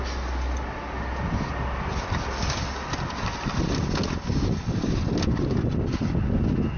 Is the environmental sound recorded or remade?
recorded